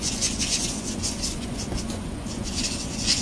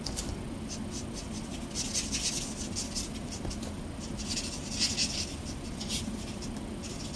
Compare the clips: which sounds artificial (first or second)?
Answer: first